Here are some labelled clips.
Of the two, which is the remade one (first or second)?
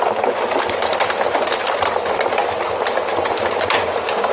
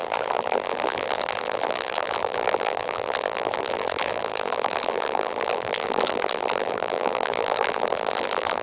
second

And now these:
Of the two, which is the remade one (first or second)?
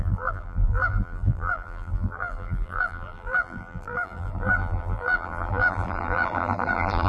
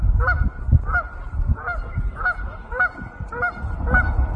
first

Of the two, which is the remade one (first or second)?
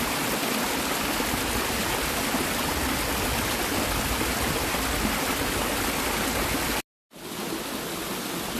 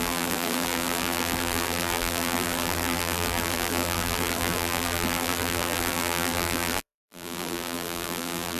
second